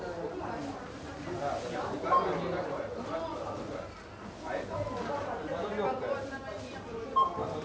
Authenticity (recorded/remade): recorded